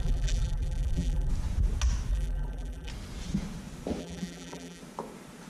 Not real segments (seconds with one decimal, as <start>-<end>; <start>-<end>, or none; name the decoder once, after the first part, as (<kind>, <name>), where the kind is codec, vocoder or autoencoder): 0.0-1.3 (vocoder, BigVGAN v2); 2.1-2.9; 4.0-4.8